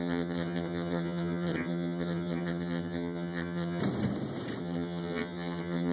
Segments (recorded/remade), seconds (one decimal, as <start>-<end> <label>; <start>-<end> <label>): 0.0-3.8 remade; 3.8-4.6 recorded; 4.6-5.9 remade